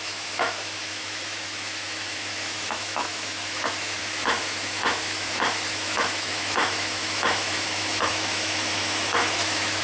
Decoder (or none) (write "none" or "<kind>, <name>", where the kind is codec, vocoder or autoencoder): autoencoder, DAC-VAE